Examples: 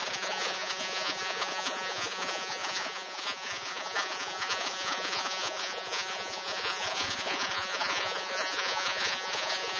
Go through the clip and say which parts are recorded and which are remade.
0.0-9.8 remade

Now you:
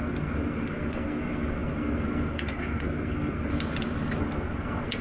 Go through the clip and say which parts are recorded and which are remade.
0.0-3.5 remade; 3.5-4.2 recorded; 4.2-5.0 remade

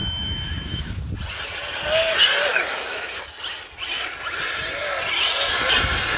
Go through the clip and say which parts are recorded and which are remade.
0.0-1.0 remade; 1.0-2.5 recorded; 2.5-3.2 remade; 3.2-6.2 recorded

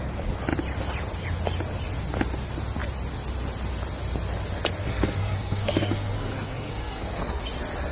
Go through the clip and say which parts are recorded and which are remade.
0.0-4.8 recorded; 4.8-7.4 remade; 7.4-7.9 recorded

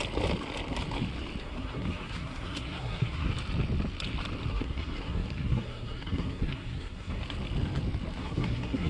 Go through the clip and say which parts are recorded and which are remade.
0.0-1.4 recorded; 1.4-3.3 remade; 3.3-4.5 recorded; 4.5-7.2 remade; 7.2-8.2 recorded; 8.2-8.9 remade

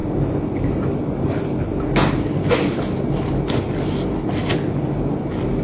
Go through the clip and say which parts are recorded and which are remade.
0.0-5.6 recorded